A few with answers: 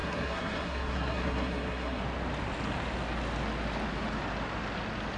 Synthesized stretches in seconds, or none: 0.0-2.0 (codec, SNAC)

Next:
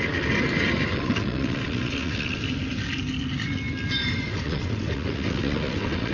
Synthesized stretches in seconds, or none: 0.9-2.4 (vocoder, WaveNeXt); 4.3-6.1

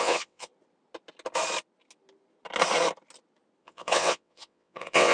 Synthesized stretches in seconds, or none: 0.0-0.5 (vocoder, WaveNeXt); 3.6-5.1

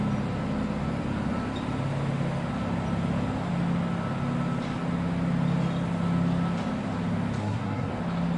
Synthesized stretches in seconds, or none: 7.4-7.9 (codec, SNAC)

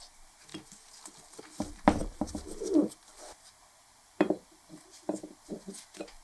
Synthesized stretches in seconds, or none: 2.0-5.7 (vocoder, BigVGAN v2)

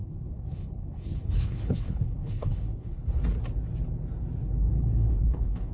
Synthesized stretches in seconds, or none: 0.0-3.1 (codec, HILCodec); 4.7-5.7

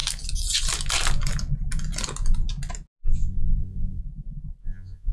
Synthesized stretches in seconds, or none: 3.1-4.0 (vocoder, Vocos); 4.6-5.1

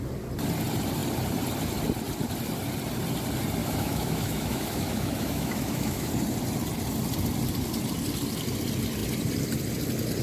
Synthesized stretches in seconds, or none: 3.6-6.1 (autoencoder, DAC-VAE)